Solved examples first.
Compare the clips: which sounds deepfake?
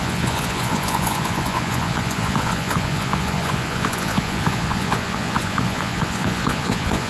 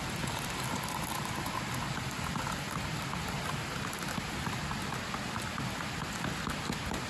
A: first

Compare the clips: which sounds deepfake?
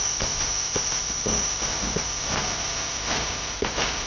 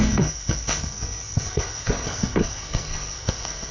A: second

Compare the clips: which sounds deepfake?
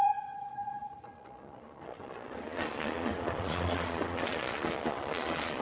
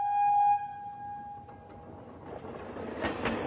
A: first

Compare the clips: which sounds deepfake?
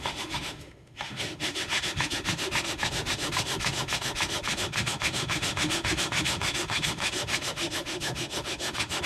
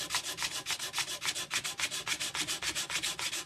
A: first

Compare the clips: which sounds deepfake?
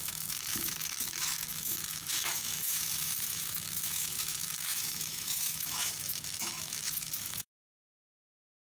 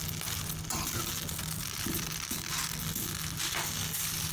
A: first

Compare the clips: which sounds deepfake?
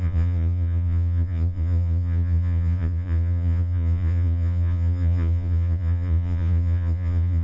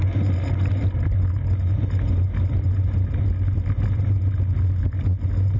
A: first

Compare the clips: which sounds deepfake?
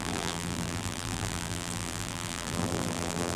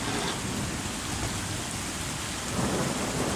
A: first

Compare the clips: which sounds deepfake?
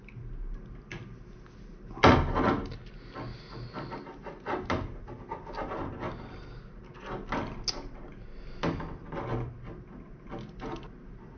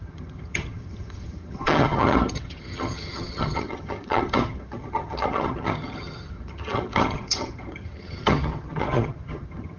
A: second